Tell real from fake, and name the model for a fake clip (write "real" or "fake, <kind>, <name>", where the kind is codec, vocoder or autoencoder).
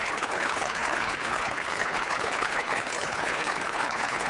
fake, codec, HILCodec